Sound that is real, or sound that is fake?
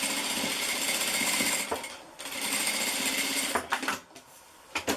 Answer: real